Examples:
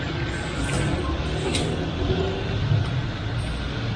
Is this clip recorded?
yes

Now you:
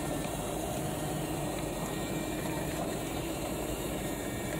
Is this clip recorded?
no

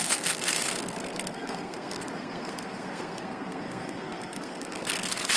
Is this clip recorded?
no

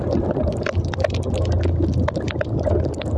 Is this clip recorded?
yes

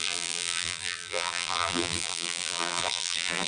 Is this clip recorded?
no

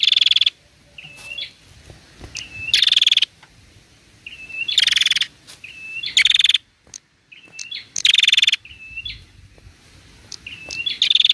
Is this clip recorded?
yes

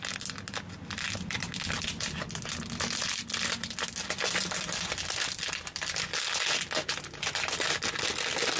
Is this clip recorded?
yes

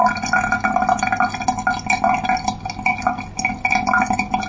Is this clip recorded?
yes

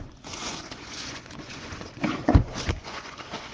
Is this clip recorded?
no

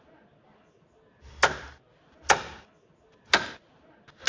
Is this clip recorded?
yes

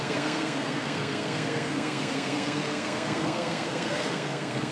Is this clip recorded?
no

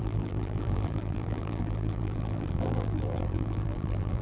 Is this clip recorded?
no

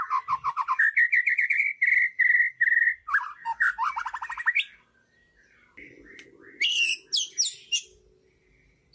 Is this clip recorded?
yes